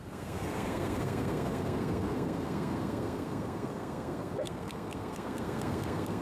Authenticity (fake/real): fake